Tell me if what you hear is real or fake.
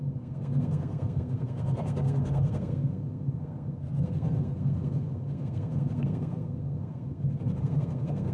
fake